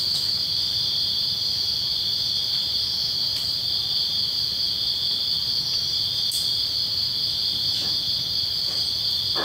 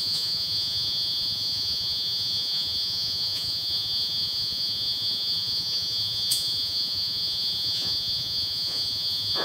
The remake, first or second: second